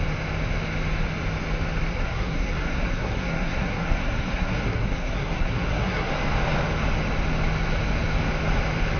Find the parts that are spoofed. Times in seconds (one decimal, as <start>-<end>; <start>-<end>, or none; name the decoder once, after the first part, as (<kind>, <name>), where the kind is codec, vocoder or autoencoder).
1.9-6.1 (codec, SNAC)